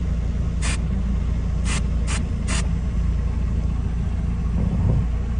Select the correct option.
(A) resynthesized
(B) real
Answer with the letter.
B